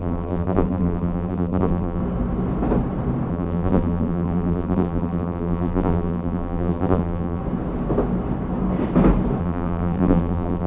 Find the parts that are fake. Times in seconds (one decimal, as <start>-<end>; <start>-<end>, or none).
0.0-2.0; 3.3-7.4; 9.4-10.7

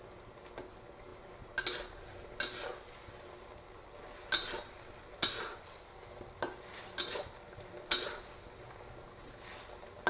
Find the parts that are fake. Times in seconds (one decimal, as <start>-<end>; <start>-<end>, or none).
none

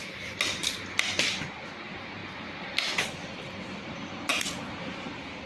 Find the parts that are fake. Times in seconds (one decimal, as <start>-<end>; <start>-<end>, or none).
0.6-4.3; 5.1-5.5

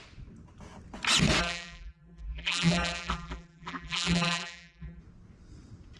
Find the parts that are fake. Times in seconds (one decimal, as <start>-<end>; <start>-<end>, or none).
1.4-5.0

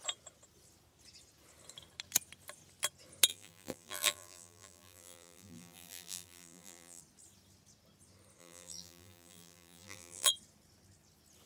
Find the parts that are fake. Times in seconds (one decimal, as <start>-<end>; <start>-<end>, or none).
3.3-7.0; 8.4-10.3